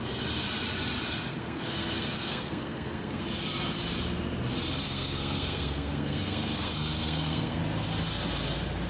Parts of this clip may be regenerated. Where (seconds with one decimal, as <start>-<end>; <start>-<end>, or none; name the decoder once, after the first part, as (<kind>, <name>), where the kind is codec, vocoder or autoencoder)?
1.3-3.2 (codec, SNAC); 4.8-7.6